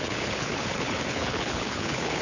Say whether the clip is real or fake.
fake